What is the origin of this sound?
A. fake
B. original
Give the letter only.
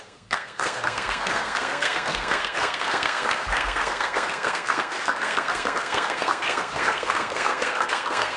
A